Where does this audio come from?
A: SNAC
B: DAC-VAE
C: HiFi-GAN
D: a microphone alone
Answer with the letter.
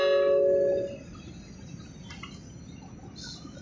D